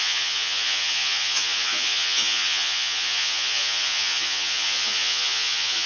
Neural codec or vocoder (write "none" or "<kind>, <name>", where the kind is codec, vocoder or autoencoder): vocoder, Vocos